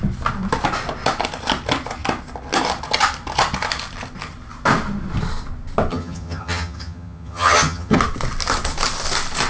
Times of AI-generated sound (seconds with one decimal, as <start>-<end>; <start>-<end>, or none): 5.9-8.0